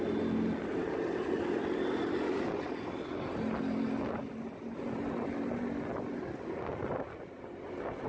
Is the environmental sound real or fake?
real